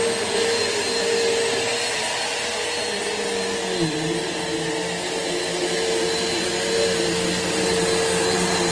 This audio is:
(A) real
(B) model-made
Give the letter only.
A